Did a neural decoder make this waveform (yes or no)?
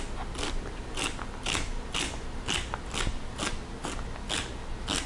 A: no